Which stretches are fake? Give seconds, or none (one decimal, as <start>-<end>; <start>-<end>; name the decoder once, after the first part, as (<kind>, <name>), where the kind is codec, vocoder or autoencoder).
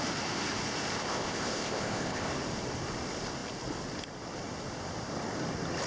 1.1-2.3 (codec, ZipCodec)